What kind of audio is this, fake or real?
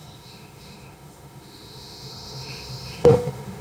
fake